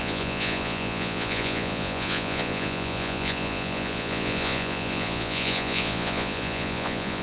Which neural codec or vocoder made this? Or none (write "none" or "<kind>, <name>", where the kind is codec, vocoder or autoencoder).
vocoder, Vocos